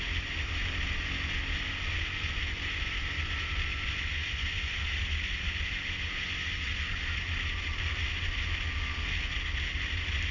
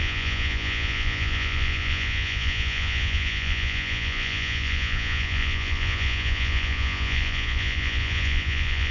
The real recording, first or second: first